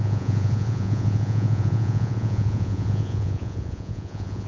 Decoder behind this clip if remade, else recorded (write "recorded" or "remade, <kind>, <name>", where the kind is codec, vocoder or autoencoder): remade, vocoder, Vocos